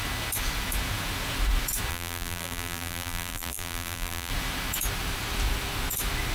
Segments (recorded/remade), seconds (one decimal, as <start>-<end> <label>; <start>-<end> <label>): 0.0-1.9 recorded; 1.9-4.3 remade; 4.3-6.3 recorded